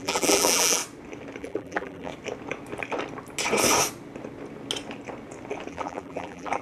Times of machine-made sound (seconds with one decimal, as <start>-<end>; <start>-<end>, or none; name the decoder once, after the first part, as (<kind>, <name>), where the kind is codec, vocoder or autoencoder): 0.0-0.8 (vocoder, BigVGAN v2); 1.4-2.1; 5.7-6.6